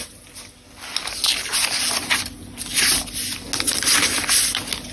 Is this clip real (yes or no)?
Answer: yes